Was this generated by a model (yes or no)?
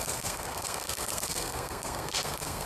yes